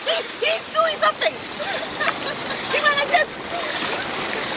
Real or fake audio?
fake